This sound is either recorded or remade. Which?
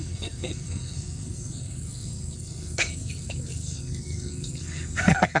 remade